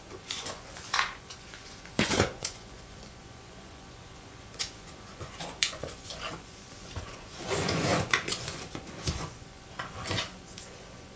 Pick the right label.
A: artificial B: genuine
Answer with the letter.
A